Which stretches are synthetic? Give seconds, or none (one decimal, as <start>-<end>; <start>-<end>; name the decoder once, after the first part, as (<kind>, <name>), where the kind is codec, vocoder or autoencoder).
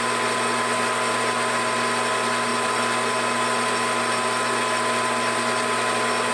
none